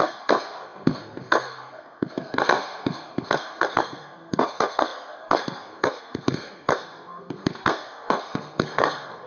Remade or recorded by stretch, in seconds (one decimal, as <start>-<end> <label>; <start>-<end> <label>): 0.0-9.3 remade